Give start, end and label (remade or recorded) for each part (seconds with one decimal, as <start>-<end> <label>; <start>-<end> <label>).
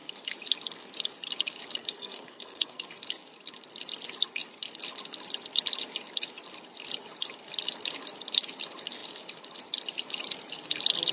0.0-1.8 recorded; 1.8-2.9 remade; 2.9-11.1 recorded